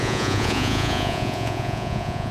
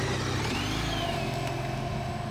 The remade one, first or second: first